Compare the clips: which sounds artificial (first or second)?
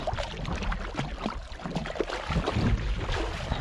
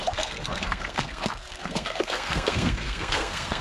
second